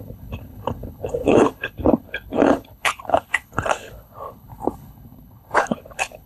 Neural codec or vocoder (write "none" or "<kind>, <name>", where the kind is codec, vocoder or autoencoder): codec, HILCodec